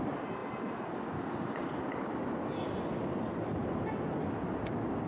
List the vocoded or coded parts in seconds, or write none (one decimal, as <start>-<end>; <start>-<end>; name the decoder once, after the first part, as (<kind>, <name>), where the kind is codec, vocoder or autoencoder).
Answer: none